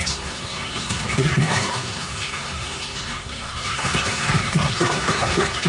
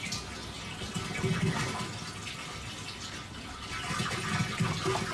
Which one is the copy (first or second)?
first